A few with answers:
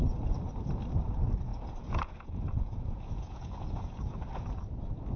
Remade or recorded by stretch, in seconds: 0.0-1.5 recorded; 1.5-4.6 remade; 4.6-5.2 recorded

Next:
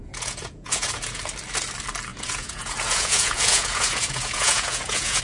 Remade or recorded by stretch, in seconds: 0.0-1.2 remade; 1.2-2.1 recorded; 2.1-5.2 remade